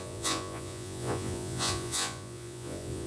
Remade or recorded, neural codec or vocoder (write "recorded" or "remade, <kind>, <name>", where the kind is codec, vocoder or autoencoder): remade, vocoder, Vocos